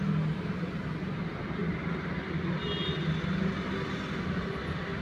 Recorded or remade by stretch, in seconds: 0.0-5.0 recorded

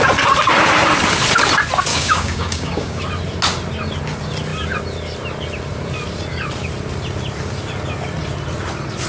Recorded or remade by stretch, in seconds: 0.0-1.9 recorded; 1.9-3.0 remade; 3.0-9.1 recorded

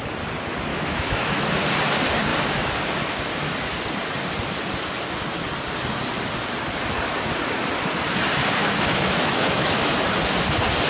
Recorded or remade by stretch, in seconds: 0.0-0.7 recorded; 0.7-1.5 remade; 1.5-8.6 recorded; 8.6-9.9 remade; 9.9-10.9 recorded

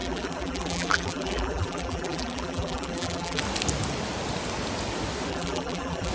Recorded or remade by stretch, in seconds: 0.0-3.4 remade; 3.4-5.3 recorded; 5.3-6.1 remade